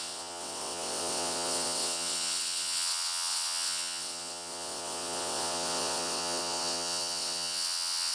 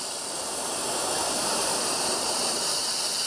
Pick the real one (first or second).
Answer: second